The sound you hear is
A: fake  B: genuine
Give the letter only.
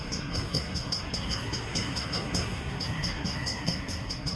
A